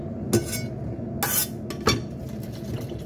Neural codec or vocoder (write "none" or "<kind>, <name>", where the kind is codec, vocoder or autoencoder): none